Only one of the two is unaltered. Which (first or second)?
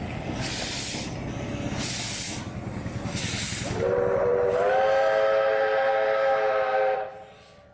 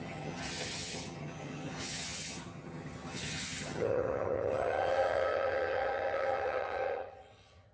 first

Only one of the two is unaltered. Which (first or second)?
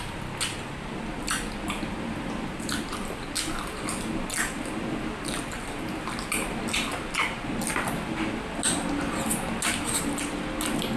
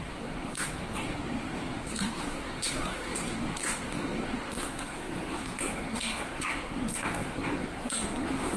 first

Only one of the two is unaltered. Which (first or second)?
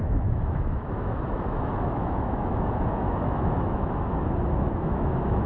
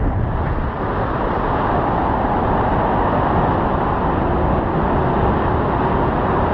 second